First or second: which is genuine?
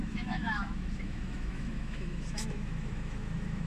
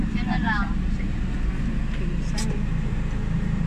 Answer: second